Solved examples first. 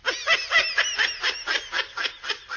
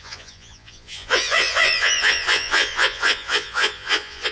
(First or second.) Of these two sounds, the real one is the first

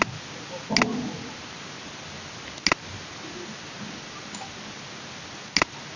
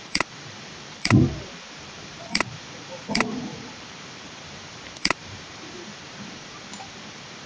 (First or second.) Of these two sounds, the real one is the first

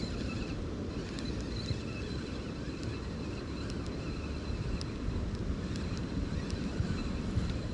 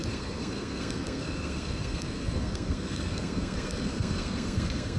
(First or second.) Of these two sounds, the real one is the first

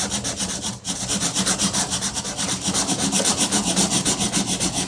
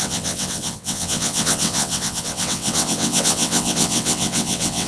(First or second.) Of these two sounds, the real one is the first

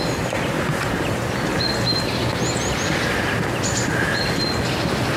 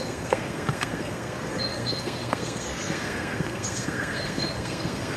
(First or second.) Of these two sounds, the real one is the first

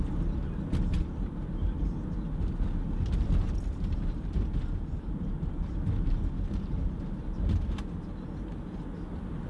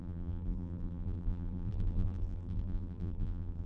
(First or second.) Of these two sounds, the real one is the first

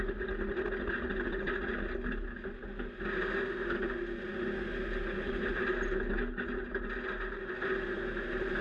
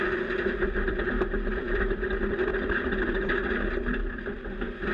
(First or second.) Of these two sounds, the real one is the first